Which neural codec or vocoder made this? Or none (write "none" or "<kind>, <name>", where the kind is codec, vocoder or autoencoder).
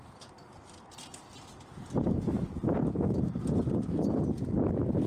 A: none